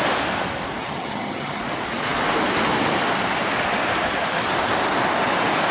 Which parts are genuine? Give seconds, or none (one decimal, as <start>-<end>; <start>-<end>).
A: 0.0-0.8; 1.6-5.7